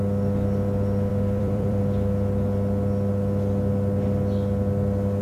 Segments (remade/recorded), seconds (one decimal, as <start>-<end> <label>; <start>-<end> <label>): 0.0-1.1 recorded; 1.1-1.8 remade; 1.8-5.2 recorded